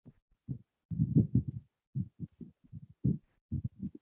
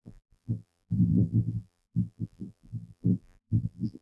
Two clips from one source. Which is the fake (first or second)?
second